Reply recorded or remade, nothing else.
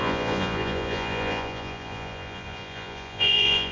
remade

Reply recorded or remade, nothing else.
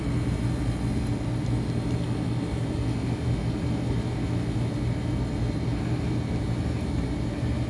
recorded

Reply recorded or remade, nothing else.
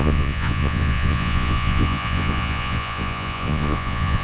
remade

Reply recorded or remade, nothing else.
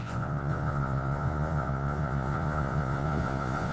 remade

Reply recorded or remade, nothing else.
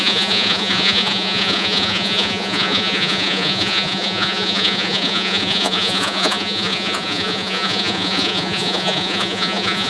remade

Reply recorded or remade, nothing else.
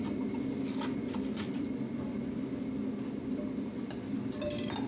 recorded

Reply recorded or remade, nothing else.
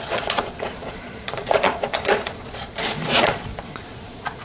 remade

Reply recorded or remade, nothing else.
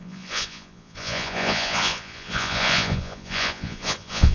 remade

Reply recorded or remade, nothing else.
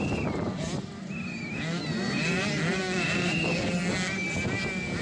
recorded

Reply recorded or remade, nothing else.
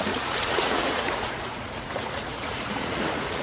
remade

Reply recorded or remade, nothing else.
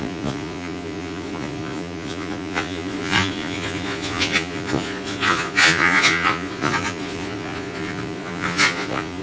remade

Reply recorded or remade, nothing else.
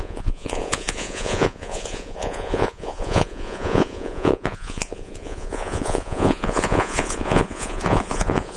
remade